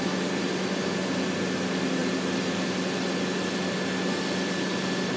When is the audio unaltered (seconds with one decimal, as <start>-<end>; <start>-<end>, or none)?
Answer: 0.0-5.2